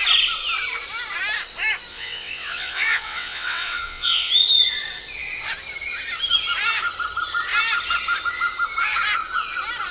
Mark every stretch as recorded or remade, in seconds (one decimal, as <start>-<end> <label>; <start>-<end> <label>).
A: 0.0-1.9 recorded; 1.9-4.3 remade; 4.3-9.9 recorded